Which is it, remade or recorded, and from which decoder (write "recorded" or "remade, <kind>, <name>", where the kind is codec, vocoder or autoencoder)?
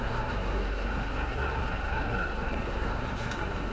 remade, codec, SNAC